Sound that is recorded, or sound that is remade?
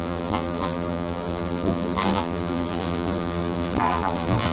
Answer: remade